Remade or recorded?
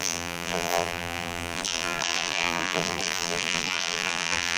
remade